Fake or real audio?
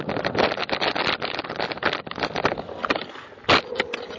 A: real